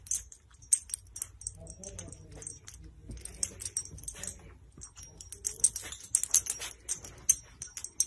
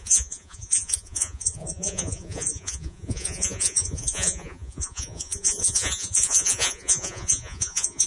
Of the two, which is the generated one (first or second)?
second